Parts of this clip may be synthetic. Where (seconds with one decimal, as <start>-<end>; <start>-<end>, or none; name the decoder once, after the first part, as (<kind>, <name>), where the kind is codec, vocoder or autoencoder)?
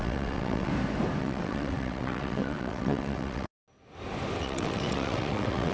0.0-0.7 (vocoder, WaveNeXt); 1.2-3.5; 4.4-5.7